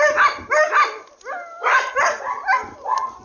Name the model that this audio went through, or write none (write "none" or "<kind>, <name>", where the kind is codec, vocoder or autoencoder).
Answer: none